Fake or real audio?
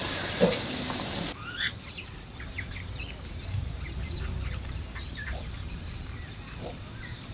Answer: fake